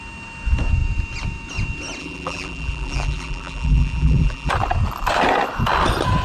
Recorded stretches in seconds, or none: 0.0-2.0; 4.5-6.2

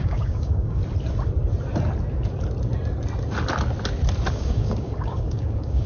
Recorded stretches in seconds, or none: 0.8-4.3

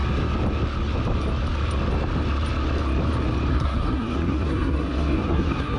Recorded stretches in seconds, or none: 0.0-3.5

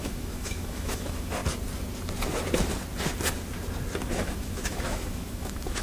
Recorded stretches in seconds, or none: 1.4-4.1